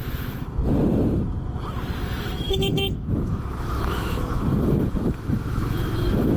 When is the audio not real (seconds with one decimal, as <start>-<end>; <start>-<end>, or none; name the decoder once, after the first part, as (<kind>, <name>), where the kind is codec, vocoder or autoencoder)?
0.0-0.6 (autoencoder, DAC-VAE); 2.0-6.4